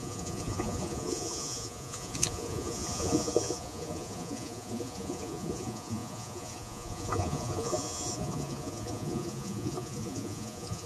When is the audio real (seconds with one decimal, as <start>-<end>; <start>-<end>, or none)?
none